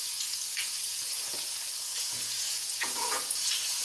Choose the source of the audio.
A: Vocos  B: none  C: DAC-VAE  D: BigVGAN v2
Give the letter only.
A